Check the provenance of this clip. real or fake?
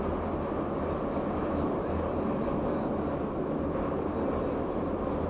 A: real